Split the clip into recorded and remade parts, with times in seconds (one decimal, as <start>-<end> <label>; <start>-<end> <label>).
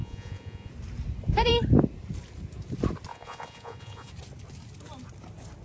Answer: 0.0-0.7 remade; 0.7-3.1 recorded; 3.1-4.1 remade; 4.1-5.6 recorded